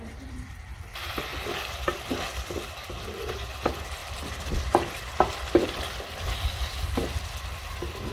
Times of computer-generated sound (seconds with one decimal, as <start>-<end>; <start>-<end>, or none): 1.3-2.7; 4.0-6.0